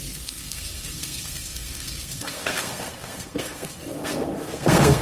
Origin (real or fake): fake